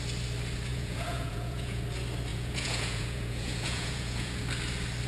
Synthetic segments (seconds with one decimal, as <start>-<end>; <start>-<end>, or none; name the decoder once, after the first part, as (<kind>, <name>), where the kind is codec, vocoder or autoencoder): 0.7-1.8 (vocoder, Vocos); 2.3-4.4